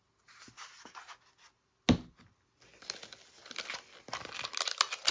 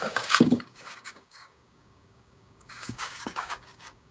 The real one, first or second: first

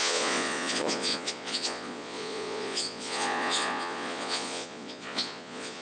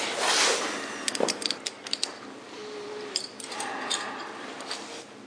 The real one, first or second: second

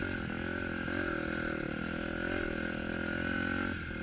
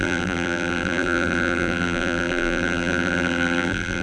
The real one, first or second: first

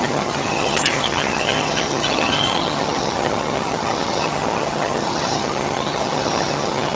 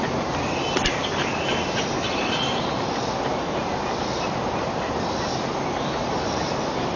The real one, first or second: second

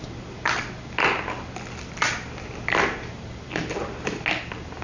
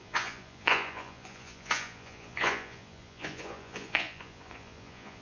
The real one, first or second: first